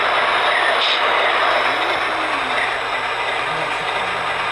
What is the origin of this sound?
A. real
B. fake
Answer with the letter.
A